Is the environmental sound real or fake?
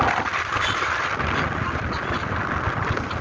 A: real